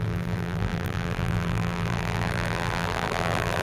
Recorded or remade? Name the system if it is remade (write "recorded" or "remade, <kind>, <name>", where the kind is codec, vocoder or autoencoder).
remade, vocoder, BigVGAN v2